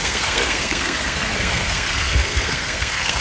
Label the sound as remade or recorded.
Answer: remade